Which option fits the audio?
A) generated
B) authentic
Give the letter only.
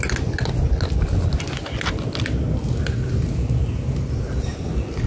B